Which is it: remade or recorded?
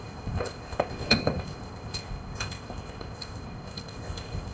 remade